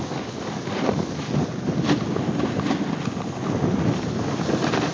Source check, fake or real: real